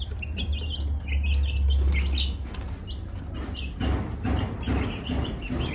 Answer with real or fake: real